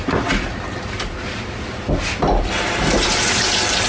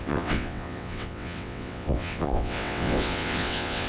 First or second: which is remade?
second